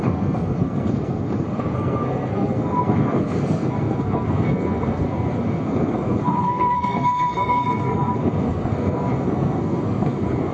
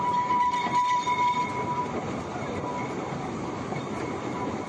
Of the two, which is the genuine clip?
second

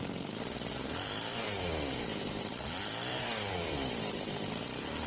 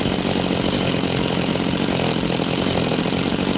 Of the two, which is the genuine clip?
second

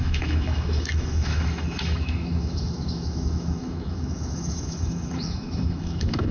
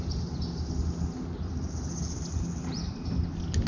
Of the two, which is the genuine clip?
second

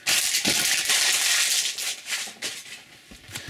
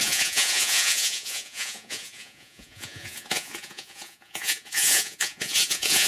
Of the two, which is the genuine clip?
first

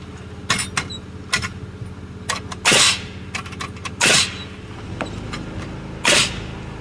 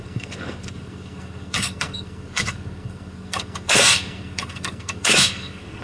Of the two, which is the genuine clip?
first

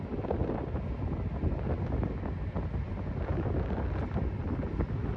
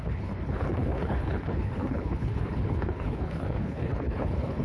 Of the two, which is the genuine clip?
first